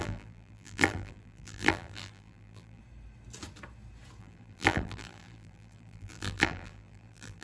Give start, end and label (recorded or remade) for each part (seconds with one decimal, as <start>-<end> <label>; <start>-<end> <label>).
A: 0.0-2.8 remade; 2.8-4.2 recorded; 4.2-7.4 remade